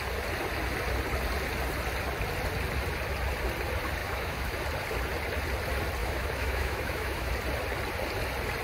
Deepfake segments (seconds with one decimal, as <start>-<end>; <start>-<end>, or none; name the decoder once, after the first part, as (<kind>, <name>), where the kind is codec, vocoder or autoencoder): 4.0-4.5 (autoencoder, DAC-VAE); 6.0-7.3